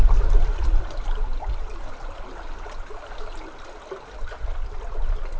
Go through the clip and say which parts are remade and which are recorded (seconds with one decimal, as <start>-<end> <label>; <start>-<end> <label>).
0.0-5.4 recorded